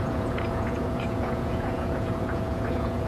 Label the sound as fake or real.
fake